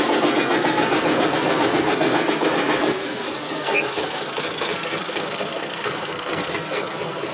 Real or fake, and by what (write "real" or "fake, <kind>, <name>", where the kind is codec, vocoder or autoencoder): fake, codec, SNAC